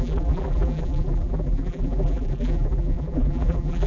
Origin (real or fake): fake